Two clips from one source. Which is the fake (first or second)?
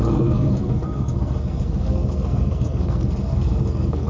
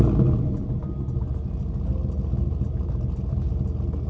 first